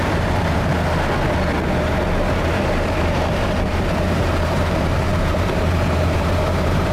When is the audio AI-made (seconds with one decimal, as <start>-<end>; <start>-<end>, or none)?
0.0-0.7; 2.4-6.9